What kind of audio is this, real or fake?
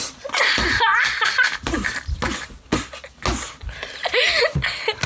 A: real